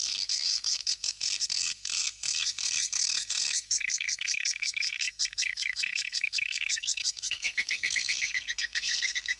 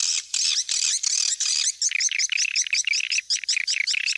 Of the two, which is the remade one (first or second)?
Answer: first